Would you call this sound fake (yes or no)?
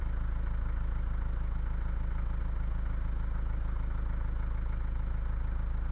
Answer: no